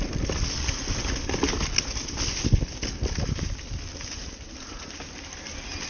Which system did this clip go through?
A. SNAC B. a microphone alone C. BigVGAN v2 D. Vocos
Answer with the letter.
B